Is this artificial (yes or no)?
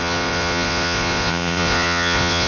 yes